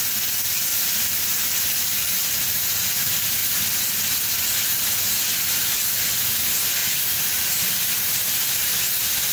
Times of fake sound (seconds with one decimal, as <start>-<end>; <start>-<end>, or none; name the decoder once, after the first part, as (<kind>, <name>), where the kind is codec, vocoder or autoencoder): 0.7-2.4 (vocoder, BigVGAN v2); 6.8-7.7

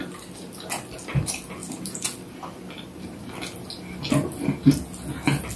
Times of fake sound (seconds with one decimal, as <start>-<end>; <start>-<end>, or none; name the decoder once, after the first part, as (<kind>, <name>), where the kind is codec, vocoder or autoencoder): 1.6-3.2 (vocoder, BigVGAN v2)